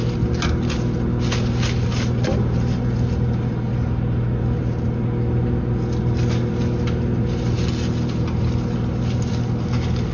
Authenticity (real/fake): real